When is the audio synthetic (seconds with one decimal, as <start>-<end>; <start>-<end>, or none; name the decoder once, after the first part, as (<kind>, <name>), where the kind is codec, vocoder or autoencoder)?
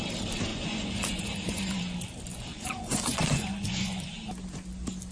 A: 0.5-1.8 (vocoder, Vocos); 2.3-4.1